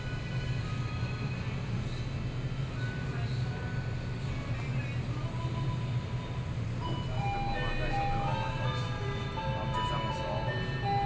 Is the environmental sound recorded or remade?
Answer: recorded